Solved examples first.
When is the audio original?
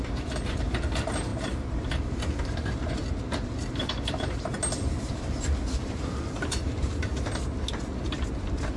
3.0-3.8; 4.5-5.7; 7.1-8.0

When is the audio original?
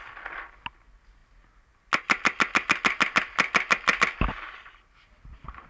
0.0-5.7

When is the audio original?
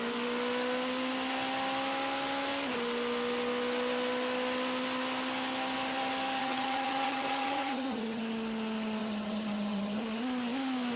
0.0-6.4; 8.2-9.0; 10.0-11.0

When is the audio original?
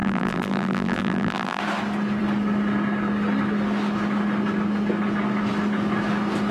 1.6-6.5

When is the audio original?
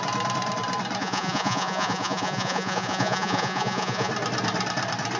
0.0-1.0; 4.1-5.2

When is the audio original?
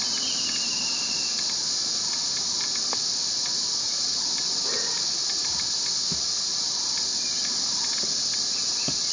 0.0-9.1